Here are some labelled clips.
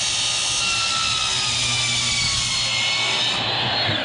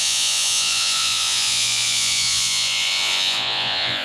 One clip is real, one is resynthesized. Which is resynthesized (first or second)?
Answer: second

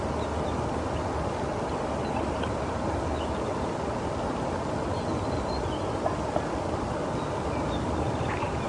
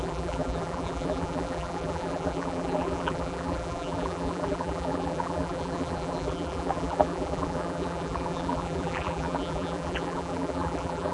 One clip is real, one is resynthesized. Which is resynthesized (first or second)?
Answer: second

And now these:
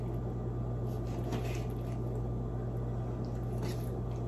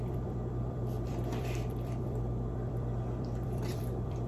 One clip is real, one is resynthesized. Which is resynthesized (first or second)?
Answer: second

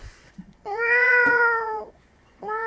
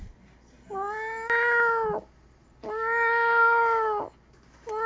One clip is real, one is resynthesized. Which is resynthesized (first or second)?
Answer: first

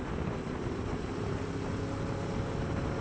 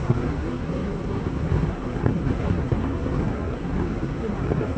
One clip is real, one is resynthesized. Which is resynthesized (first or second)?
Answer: second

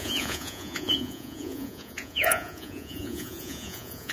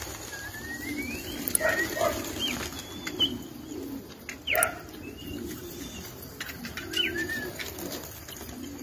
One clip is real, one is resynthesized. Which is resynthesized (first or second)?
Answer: first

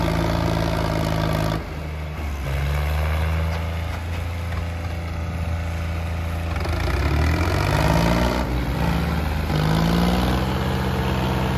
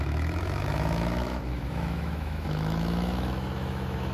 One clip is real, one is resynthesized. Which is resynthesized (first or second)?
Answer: second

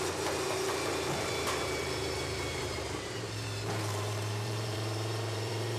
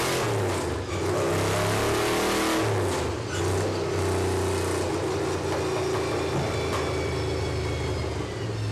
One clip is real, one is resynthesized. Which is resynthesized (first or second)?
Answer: first